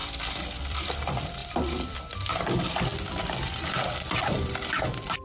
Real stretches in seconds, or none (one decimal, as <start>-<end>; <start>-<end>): 0.9-1.4; 2.0-2.9

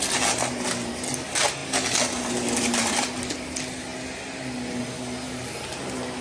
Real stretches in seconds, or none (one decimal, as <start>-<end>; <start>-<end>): 0.0-6.2

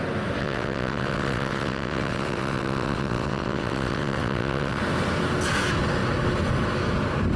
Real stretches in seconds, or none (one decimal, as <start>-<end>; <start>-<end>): 0.0-0.4; 4.8-7.4

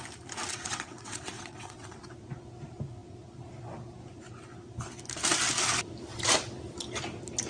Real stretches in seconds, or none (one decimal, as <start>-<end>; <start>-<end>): 0.0-0.5; 2.0-7.5

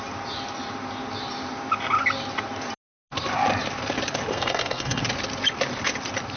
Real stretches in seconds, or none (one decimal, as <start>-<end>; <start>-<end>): 0.0-4.3; 5.0-6.4

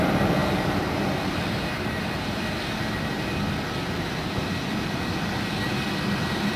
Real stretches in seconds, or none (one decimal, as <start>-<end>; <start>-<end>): 0.0-6.6

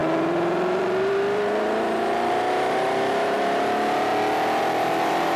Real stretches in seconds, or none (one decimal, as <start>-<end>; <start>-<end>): 4.1-4.6